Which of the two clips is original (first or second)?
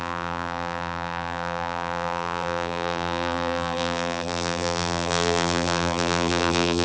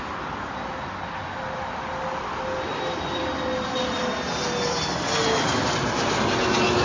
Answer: second